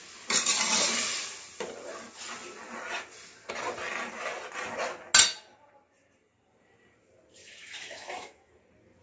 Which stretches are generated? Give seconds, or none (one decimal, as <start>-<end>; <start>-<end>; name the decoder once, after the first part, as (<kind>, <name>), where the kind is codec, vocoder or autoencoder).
7.4-8.5 (autoencoder, DAC-VAE)